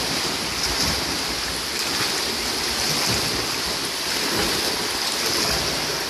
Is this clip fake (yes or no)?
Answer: no